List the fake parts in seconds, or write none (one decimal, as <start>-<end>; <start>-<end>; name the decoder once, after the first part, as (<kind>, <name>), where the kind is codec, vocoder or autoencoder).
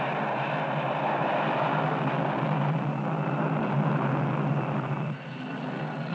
none